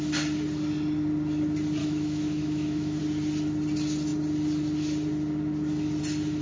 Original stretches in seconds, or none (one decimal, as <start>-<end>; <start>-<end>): 0.0-1.8; 3.0-6.4

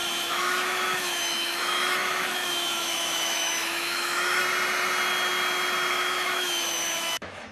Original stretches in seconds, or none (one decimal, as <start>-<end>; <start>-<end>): 4.4-5.9